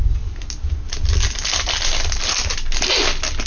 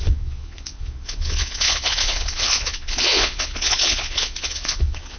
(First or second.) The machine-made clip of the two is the second